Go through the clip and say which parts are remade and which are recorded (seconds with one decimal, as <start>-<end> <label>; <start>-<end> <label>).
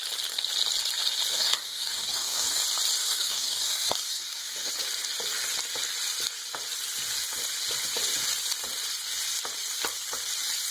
0.0-1.3 recorded; 1.3-2.6 remade; 2.6-3.0 recorded; 3.0-4.7 remade; 4.7-10.7 recorded